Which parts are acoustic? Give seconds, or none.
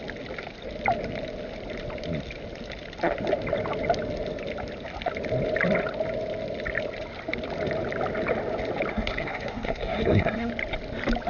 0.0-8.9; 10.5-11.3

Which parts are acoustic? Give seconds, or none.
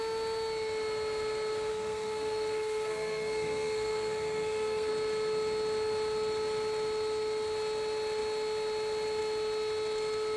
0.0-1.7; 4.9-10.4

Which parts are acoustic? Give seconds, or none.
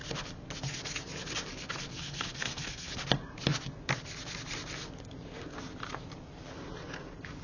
0.0-1.9; 2.9-7.4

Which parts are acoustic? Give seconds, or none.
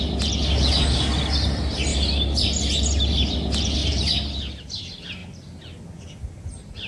0.0-6.9